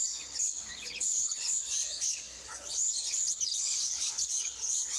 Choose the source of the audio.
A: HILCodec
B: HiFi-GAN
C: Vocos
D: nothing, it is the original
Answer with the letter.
A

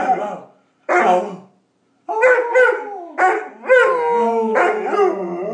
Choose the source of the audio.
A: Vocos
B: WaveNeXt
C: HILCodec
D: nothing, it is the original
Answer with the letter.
D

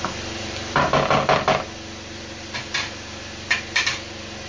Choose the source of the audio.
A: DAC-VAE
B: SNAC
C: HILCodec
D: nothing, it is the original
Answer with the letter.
D